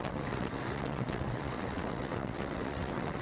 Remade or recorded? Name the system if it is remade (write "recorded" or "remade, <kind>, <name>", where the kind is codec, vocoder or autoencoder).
remade, vocoder, WaveNeXt